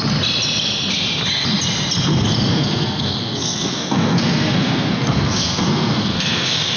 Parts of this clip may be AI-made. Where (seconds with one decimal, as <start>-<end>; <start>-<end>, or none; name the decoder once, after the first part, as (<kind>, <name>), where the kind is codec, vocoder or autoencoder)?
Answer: 2.5-6.8 (codec, SNAC)